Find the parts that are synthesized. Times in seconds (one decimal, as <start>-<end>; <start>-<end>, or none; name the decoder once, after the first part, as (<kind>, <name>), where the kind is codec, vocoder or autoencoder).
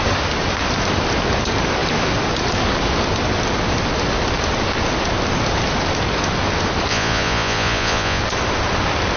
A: 6.9-8.2 (vocoder, Vocos)